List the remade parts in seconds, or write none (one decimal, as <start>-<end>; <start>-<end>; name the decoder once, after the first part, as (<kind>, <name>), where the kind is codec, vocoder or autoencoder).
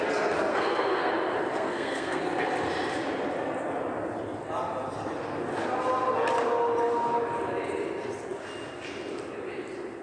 0.5-1.1 (codec, SNAC); 1.5-2.2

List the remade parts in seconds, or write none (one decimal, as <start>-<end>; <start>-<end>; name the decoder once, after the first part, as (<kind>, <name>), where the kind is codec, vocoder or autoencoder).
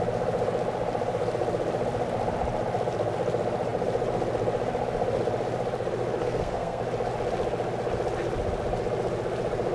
6.2-6.8 (codec, SNAC)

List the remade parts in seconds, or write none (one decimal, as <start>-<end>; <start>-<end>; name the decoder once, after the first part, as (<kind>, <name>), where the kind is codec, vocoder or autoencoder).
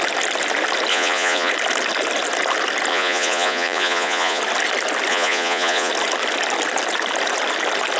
0.9-1.5 (vocoder, Vocos); 2.9-4.4; 5.1-5.9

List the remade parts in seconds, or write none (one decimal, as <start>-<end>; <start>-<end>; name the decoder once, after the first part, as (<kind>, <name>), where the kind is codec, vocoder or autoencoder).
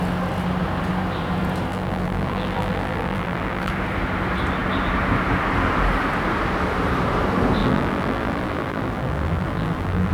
1.7-3.7 (vocoder, BigVGAN v2); 7.6-10.1